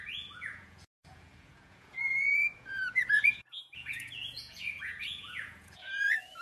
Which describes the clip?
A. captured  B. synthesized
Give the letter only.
B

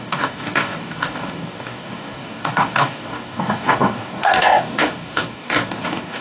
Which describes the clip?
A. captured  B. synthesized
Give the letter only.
B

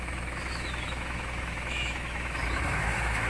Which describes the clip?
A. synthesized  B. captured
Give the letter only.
A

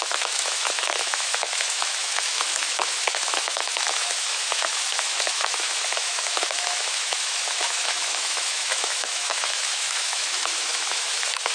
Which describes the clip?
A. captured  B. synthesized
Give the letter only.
B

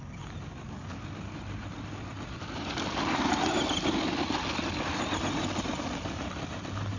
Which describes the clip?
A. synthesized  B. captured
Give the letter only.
B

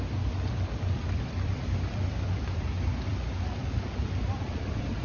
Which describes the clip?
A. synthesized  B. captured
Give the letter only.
A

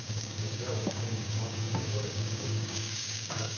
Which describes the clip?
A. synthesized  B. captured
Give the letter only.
A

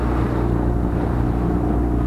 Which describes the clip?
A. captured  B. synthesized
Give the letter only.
A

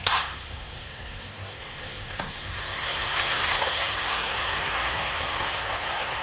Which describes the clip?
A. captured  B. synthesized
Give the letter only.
B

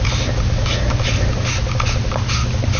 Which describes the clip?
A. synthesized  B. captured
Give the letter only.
B